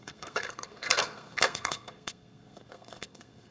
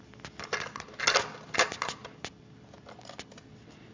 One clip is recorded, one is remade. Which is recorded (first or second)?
second